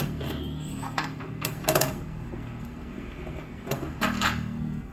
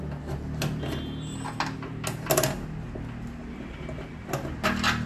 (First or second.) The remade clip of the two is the first